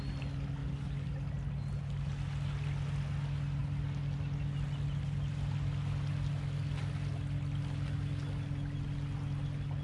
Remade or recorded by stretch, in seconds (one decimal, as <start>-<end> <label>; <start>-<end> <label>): 0.0-9.8 recorded